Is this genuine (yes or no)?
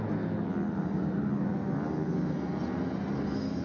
yes